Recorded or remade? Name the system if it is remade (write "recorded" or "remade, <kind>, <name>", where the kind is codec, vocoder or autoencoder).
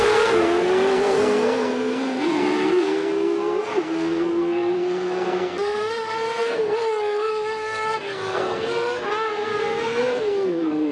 remade, codec, SNAC